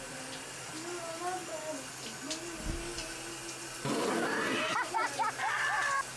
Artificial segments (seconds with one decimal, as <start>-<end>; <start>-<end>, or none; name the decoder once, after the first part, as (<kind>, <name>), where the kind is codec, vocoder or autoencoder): none